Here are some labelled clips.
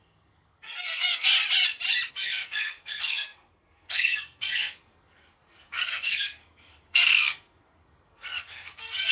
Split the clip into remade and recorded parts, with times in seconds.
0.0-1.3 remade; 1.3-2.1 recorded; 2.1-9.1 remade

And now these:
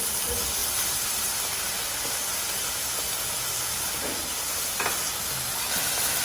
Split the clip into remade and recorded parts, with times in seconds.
0.0-6.2 recorded

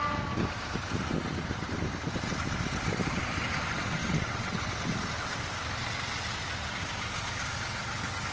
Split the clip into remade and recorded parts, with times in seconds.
0.0-4.0 recorded; 4.0-4.6 remade; 4.6-8.3 recorded

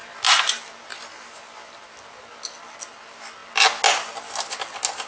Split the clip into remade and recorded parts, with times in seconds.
0.0-5.1 recorded

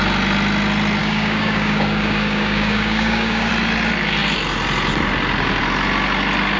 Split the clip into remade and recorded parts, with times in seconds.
0.0-1.0 recorded; 1.0-3.5 remade; 3.5-6.6 recorded

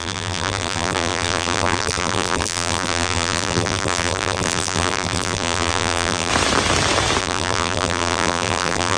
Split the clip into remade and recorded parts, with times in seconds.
0.0-6.3 remade; 6.3-7.2 recorded; 7.2-9.0 remade

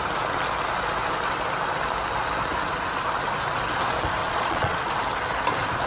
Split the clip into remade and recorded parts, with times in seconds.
0.0-4.2 recorded; 4.2-4.9 remade; 4.9-5.9 recorded

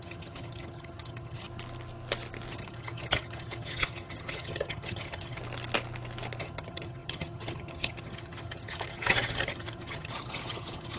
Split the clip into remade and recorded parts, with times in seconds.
0.0-1.5 remade; 1.5-2.5 recorded; 2.5-5.4 remade; 5.4-6.4 recorded; 6.4-11.0 remade